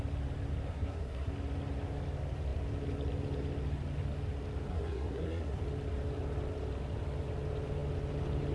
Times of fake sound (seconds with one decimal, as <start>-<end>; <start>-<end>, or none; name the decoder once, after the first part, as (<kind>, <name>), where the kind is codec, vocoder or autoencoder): 0.7-1.3 (codec, SNAC); 4.7-5.6